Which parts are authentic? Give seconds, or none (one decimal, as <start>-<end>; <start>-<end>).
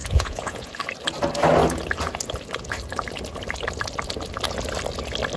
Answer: 0.7-5.4